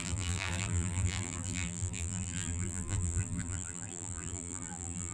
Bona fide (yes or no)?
no